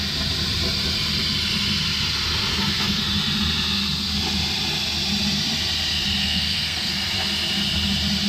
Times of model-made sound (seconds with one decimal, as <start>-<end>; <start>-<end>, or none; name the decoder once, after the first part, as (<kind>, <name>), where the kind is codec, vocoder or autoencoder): 2.5-3.0 (codec, SNAC); 6.2-6.9